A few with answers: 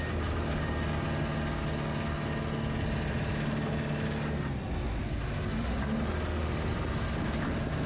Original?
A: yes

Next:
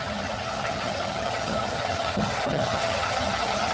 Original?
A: no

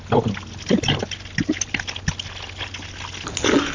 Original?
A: yes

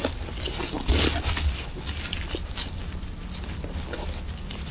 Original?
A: yes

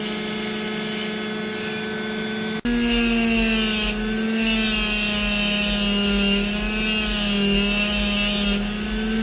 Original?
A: yes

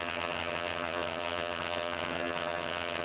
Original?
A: no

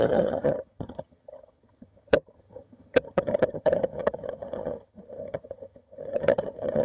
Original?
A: no